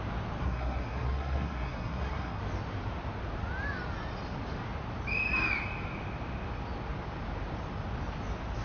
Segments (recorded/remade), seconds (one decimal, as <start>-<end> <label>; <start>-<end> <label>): 0.0-0.4 recorded; 0.4-2.4 remade; 2.4-8.6 recorded